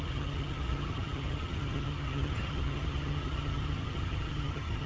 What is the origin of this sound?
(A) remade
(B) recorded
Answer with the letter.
A